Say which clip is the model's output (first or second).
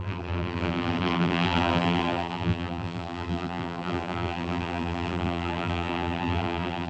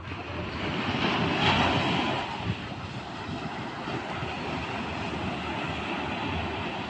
first